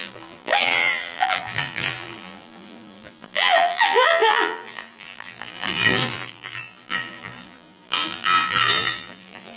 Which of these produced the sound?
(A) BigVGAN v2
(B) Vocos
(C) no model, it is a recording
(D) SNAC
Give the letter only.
A